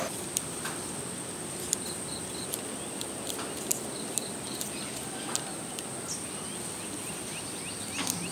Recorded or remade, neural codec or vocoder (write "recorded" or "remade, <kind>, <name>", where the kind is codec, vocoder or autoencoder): recorded